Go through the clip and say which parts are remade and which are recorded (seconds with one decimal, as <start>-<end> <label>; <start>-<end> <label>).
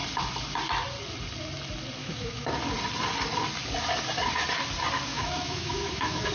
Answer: 0.0-2.0 recorded; 2.0-2.6 remade; 2.6-5.1 recorded; 5.1-6.3 remade